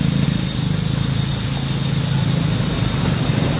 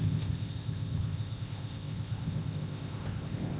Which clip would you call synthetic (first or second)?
second